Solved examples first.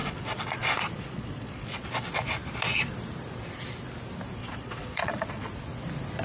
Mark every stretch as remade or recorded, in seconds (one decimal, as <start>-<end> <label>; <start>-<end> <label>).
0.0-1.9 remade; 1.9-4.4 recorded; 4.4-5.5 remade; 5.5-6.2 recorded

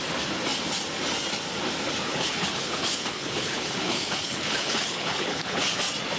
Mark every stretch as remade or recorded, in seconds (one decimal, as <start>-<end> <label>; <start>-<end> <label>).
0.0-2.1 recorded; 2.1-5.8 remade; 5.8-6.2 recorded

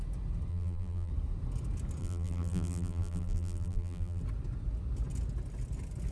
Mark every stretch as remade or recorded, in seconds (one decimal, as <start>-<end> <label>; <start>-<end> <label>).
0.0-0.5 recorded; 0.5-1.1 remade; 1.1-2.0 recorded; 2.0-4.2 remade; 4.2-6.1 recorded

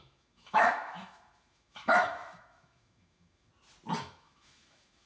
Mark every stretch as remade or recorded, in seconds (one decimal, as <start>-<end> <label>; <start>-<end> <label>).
0.0-3.5 remade; 3.5-4.0 recorded; 4.0-5.1 remade

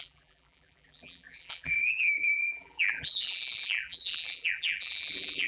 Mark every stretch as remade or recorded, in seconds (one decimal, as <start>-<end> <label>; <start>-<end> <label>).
0.0-5.5 remade

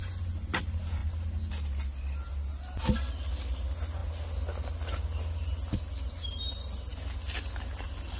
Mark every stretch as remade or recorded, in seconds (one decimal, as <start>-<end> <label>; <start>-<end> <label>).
0.0-2.5 recorded; 2.5-3.0 remade; 3.0-8.2 recorded

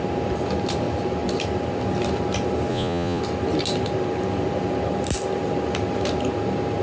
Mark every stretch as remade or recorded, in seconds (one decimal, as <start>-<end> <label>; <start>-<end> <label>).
0.0-2.7 recorded; 2.7-3.2 remade; 3.2-6.8 recorded